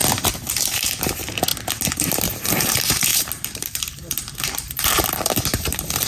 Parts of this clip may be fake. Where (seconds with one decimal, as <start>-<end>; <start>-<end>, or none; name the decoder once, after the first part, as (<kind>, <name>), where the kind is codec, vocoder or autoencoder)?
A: 0.7-1.5 (vocoder, BigVGAN v2); 2.1-6.1